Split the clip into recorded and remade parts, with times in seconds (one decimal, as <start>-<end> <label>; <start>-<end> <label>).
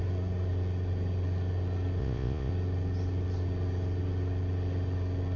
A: 0.0-2.0 recorded; 2.0-2.5 remade; 2.5-5.4 recorded